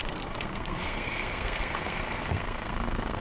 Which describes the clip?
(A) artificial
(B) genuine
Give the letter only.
A